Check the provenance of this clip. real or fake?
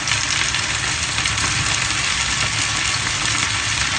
real